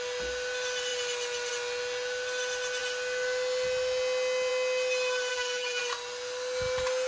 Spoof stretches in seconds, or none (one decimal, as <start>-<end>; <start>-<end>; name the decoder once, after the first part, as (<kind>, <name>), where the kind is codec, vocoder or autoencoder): 5.3-5.8 (vocoder, BigVGAN v2)

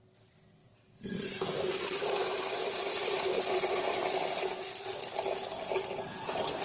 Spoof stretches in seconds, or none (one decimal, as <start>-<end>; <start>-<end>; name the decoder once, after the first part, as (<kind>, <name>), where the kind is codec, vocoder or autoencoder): 0.6-1.7 (vocoder, BigVGAN v2); 2.9-3.7

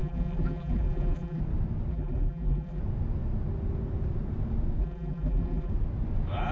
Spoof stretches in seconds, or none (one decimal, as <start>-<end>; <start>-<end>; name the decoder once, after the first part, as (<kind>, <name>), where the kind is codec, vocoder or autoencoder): 0.0-1.4 (vocoder, BigVGAN v2); 1.9-2.8; 4.8-5.7

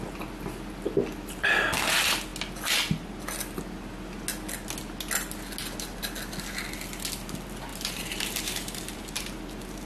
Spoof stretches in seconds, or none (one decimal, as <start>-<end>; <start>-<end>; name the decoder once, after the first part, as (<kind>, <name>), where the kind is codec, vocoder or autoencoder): 7.7-9.4 (vocoder, BigVGAN v2)

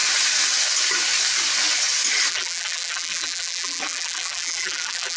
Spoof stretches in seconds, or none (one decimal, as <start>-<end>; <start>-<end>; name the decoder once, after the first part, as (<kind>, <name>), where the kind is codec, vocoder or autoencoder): 2.3-5.2 (vocoder, BigVGAN v2)